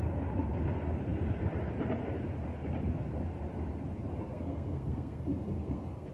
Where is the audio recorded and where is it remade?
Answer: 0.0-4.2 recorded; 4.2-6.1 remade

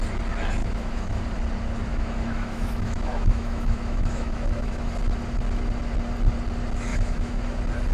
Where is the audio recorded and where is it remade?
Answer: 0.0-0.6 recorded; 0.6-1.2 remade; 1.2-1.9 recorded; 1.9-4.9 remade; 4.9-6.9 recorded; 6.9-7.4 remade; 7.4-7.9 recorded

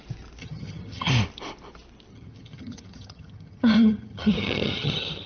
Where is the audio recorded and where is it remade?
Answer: 0.0-0.4 recorded; 0.4-1.1 remade; 1.1-2.1 recorded; 2.1-5.3 remade

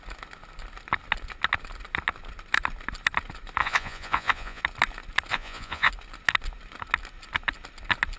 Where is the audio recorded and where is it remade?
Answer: 0.0-3.6 recorded; 3.6-4.6 remade; 4.6-5.3 recorded; 5.3-5.9 remade; 5.9-8.2 recorded

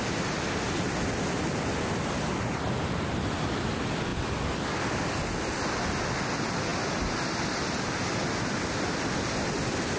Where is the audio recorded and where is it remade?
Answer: 0.0-10.0 recorded